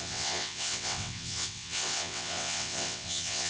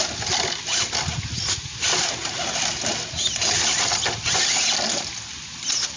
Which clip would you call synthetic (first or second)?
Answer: first